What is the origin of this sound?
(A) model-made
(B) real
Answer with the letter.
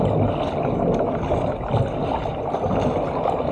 B